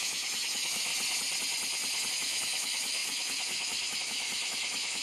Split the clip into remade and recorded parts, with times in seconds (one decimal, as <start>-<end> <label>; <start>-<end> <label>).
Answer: 0.0-0.9 remade; 0.9-2.1 recorded; 2.1-5.0 remade